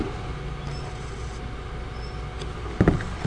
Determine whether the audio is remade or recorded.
recorded